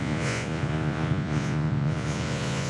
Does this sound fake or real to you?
fake